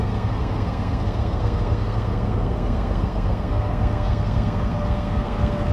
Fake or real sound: fake